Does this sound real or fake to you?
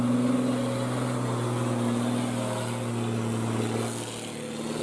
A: real